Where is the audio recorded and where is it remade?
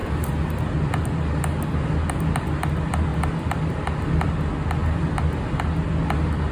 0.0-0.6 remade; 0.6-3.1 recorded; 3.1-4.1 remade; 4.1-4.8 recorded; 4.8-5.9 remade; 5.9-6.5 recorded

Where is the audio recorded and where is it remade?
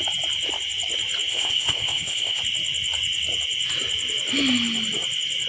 0.0-1.3 recorded; 1.3-2.4 remade; 2.4-5.5 recorded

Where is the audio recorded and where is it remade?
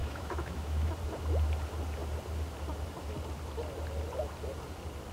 0.0-0.9 remade; 0.9-5.1 recorded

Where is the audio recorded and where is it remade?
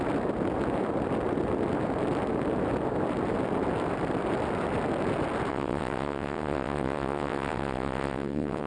0.0-5.5 recorded; 5.5-8.7 remade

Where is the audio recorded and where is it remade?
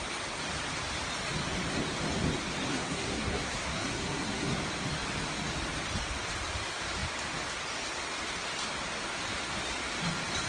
0.0-2.7 recorded; 2.7-4.6 remade; 4.6-10.5 recorded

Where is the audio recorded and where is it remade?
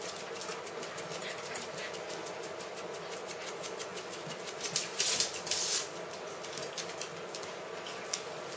0.0-8.6 recorded